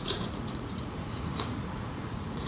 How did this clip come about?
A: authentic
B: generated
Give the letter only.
B